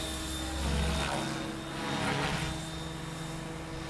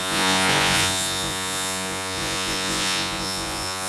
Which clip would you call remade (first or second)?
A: second